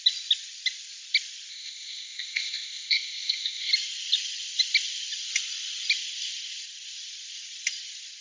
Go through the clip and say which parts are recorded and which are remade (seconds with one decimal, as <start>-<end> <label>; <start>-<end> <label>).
0.0-1.5 recorded; 1.5-3.7 remade; 3.7-8.2 recorded